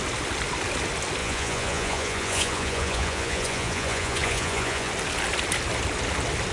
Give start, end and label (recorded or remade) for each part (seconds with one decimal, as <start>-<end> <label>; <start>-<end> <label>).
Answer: 0.0-1.2 recorded; 1.2-4.9 remade; 4.9-6.5 recorded